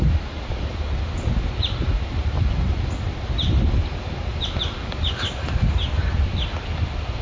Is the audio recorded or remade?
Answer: recorded